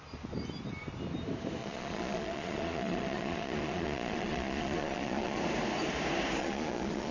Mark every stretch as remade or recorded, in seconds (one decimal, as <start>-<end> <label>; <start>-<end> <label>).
0.0-1.6 recorded; 1.6-5.4 remade; 5.4-6.4 recorded; 6.4-7.1 remade

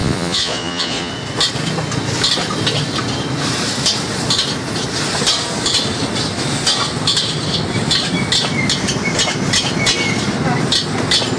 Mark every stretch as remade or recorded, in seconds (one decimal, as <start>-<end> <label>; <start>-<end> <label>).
0.0-1.1 remade; 1.1-11.4 recorded

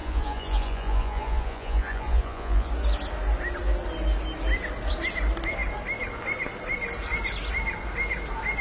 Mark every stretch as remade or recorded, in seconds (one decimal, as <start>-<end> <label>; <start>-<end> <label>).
0.0-2.7 remade; 2.7-8.6 recorded

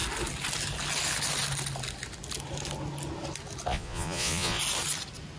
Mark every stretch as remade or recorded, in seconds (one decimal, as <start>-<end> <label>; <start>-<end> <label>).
0.0-3.7 recorded; 3.7-4.6 remade; 4.6-5.4 recorded

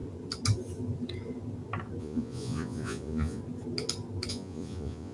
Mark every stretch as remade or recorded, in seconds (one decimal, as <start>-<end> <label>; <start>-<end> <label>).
0.0-2.0 recorded; 2.0-3.4 remade; 3.4-4.3 recorded; 4.3-5.1 remade